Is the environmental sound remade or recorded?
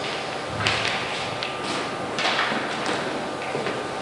recorded